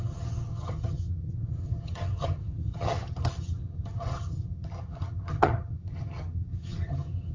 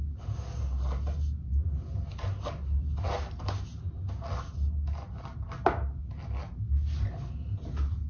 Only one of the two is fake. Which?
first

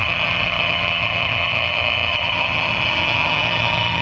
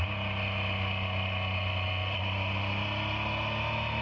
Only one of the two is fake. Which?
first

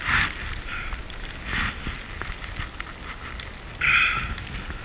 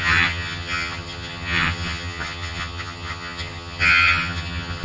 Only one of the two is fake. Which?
second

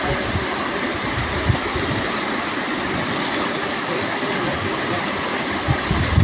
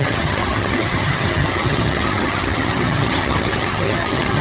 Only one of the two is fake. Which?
second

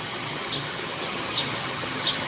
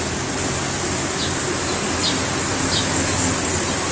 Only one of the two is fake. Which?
first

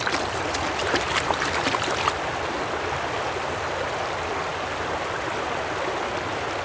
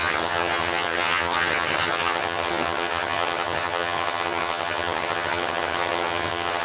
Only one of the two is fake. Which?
second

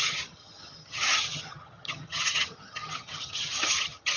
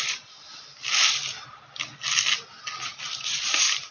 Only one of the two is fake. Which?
first